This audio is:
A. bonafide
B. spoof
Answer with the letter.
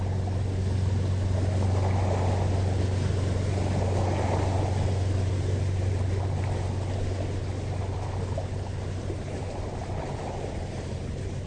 A